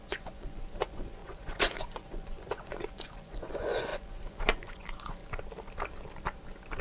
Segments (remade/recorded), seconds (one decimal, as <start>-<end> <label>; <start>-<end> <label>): 0.0-5.2 remade; 5.2-6.8 recorded